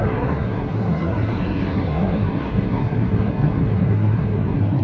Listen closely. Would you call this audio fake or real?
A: fake